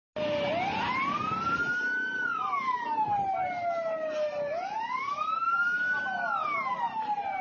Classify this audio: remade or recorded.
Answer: recorded